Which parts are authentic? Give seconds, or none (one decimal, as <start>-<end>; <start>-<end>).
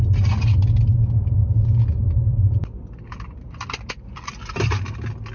0.0-2.3; 3.8-5.3